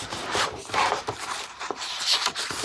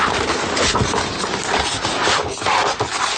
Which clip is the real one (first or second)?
second